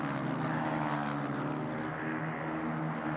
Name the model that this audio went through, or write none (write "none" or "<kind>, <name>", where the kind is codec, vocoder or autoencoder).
none